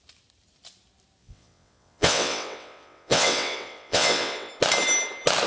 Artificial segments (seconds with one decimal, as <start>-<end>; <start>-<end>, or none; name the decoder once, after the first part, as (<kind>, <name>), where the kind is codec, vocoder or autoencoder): 1.2-4.5 (vocoder, WaveNeXt)